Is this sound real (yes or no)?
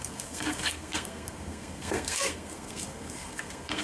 no